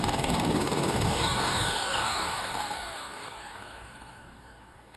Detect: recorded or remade remade